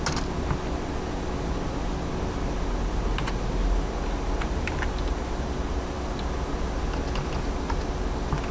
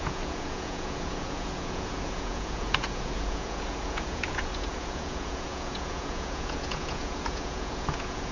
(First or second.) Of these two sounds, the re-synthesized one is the second